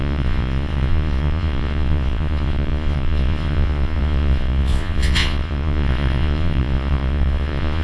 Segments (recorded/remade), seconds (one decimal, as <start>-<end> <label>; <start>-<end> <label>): 0.0-7.8 remade